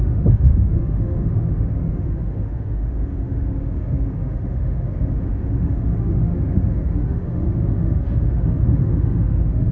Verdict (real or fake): fake